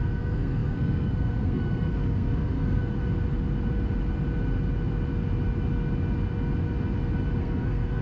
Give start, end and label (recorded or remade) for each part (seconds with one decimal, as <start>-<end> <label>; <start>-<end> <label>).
0.0-2.8 remade; 2.8-7.4 recorded; 7.4-8.0 remade